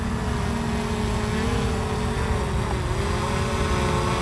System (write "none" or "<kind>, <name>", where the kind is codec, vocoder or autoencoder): none